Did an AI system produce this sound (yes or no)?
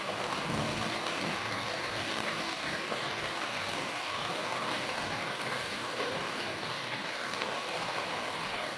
yes